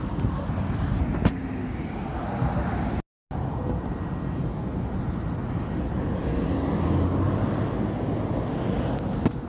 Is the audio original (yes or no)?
yes